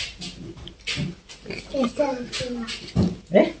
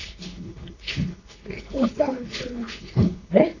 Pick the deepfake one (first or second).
second